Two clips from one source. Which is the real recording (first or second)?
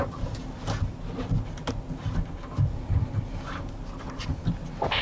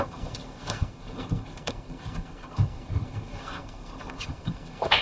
first